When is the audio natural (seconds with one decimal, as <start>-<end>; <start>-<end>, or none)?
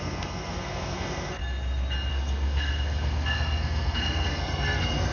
1.4-2.1